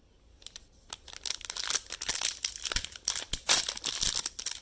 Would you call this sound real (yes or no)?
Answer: yes